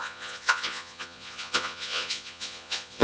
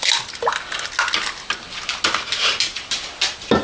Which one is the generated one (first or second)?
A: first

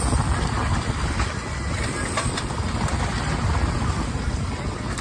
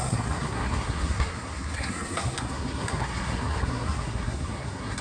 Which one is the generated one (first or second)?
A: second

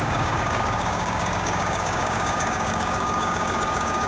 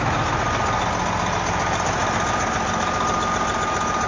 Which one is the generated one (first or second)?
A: first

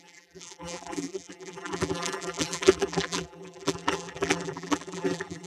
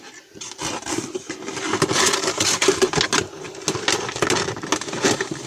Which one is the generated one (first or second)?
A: first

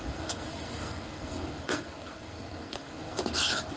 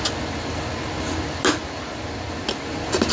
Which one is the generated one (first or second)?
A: first